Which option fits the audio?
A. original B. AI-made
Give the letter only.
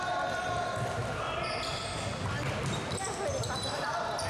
A